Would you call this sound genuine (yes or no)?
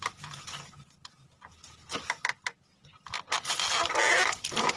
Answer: yes